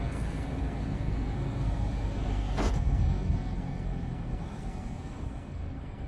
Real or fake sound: fake